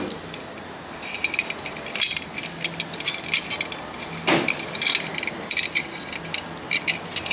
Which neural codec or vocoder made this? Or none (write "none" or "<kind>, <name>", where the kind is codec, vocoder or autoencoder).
none